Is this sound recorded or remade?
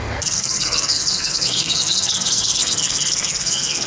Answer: remade